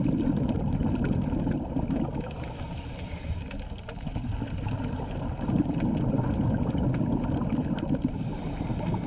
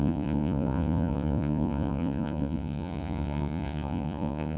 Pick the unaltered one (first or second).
first